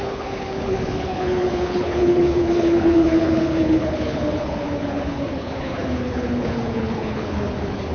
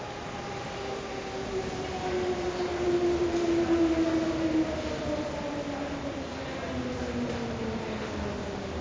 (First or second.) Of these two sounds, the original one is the second